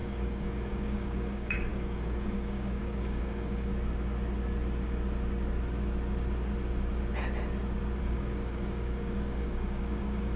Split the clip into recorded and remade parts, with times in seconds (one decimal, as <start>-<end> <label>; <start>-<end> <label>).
0.0-3.7 remade; 3.7-8.0 recorded; 8.0-10.4 remade